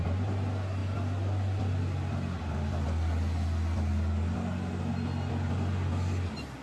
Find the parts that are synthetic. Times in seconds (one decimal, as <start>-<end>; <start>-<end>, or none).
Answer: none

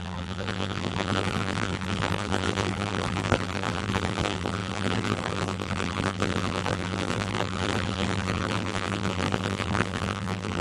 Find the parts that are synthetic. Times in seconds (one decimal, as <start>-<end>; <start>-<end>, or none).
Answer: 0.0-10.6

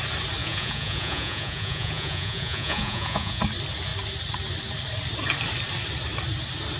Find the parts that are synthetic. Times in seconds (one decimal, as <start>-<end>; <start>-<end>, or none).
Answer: 0.4-3.4

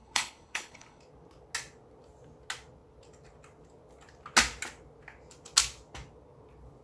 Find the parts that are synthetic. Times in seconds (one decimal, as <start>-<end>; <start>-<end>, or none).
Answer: 0.0-1.0

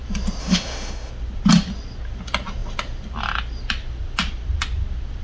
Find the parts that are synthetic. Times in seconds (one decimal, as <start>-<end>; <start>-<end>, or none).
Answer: 0.4-1.1

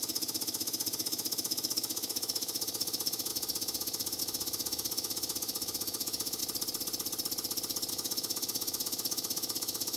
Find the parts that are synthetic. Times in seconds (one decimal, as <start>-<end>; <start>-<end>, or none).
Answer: 0.0-6.4; 7.9-10.0